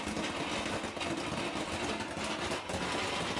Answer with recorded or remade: recorded